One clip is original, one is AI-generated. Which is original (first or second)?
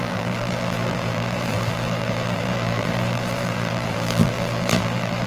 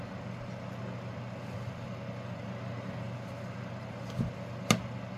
second